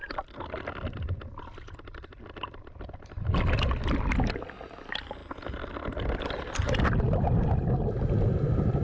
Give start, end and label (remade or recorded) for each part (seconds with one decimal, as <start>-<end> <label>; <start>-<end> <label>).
0.0-8.8 recorded